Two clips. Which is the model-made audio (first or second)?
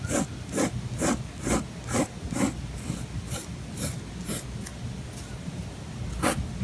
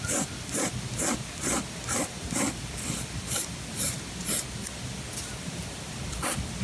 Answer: second